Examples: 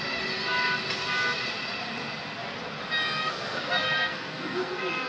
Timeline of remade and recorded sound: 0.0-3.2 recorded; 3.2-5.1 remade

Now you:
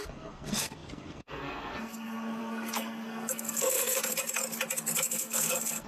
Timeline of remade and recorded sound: 0.0-4.0 remade; 4.0-5.1 recorded; 5.1-5.9 remade

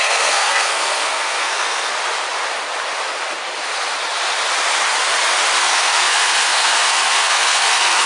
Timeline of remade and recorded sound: 0.0-1.9 remade; 1.9-5.6 recorded; 5.6-8.1 remade